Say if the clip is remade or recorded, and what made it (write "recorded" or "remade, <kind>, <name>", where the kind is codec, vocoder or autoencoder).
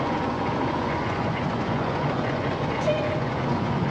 remade, vocoder, Vocos